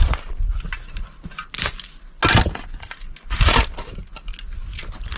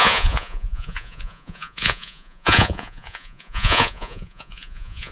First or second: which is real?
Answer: first